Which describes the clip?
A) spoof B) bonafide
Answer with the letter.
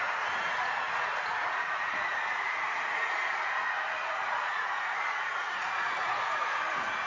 A